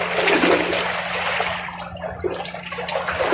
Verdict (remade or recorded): recorded